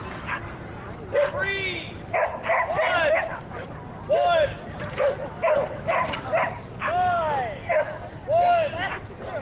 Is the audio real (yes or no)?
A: yes